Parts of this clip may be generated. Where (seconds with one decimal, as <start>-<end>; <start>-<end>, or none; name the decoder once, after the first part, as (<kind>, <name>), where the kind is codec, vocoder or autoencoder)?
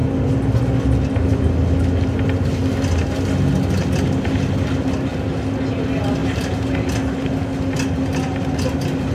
none